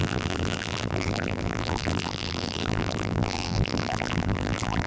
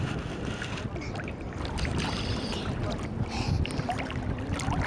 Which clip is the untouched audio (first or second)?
second